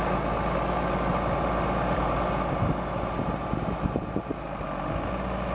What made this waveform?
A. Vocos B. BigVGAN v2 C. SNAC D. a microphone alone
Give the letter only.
D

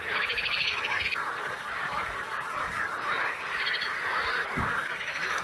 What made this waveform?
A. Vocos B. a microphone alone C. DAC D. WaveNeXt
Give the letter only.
C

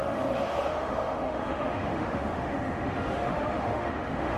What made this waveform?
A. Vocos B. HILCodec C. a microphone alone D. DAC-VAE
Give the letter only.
D